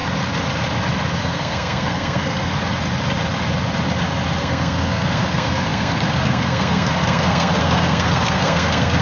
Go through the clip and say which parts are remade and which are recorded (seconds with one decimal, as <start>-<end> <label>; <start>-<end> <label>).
0.0-1.2 recorded; 1.2-2.5 remade; 2.5-4.4 recorded; 4.4-9.0 remade